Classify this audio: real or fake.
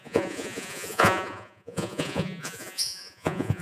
fake